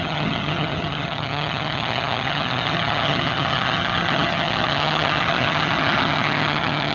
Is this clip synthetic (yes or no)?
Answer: yes